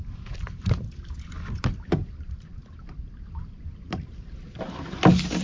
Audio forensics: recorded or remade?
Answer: recorded